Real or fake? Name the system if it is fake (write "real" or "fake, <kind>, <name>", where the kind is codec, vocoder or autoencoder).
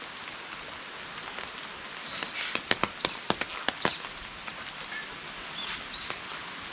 real